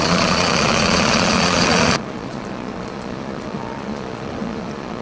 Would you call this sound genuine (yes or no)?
no